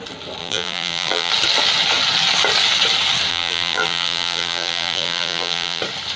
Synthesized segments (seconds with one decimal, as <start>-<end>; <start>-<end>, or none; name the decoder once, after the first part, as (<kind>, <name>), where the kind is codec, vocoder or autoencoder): 0.4-1.3 (vocoder, BigVGAN v2); 3.3-5.8